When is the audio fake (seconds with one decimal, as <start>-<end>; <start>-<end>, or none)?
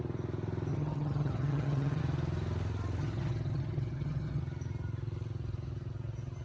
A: 0.7-2.0; 3.0-4.4